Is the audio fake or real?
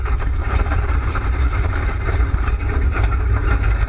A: fake